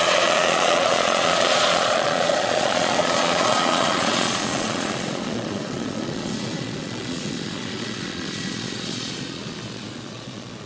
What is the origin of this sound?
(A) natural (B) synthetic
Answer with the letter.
B